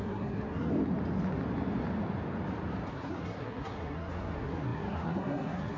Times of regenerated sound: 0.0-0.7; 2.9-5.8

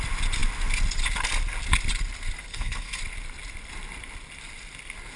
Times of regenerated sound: 2.5-3.0

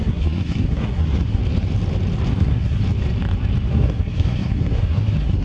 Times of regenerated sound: 0.0-1.4; 2.3-2.8; 3.7-5.4